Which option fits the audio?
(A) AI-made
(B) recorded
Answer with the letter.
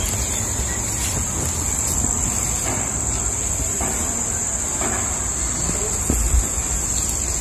B